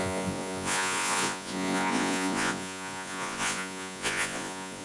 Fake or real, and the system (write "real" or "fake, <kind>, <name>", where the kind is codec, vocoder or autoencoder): fake, vocoder, Vocos